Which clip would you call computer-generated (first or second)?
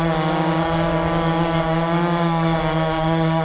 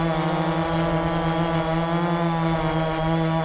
first